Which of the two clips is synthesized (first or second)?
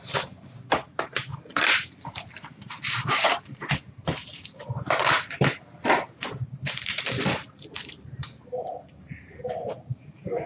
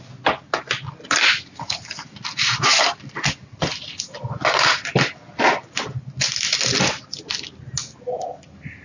first